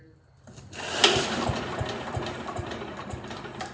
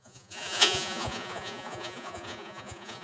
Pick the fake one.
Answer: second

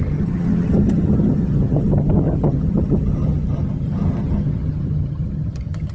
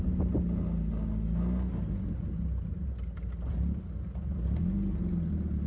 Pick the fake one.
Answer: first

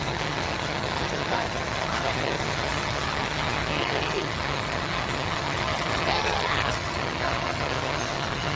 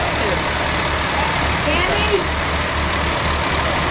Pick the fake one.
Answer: first